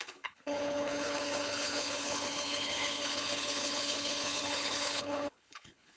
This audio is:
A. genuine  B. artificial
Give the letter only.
B